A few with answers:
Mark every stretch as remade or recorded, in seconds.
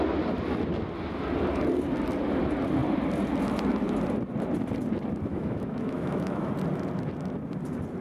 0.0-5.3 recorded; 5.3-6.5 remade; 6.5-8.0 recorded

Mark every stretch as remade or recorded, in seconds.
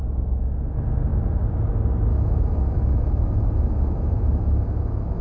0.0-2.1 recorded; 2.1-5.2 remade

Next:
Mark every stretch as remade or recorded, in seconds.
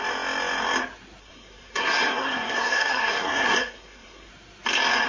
0.0-1.2 recorded; 1.2-4.3 remade; 4.3-5.1 recorded